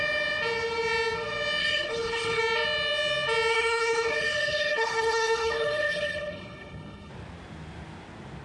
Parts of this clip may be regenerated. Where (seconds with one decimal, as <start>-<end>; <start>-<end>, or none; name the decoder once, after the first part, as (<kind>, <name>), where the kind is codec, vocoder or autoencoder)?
1.6-2.4 (codec, HILCodec); 3.5-7.1